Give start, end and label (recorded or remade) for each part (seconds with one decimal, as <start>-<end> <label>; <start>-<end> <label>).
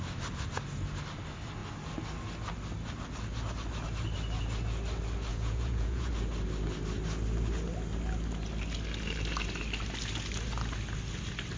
0.0-5.3 recorded; 5.3-6.1 remade; 6.1-11.6 recorded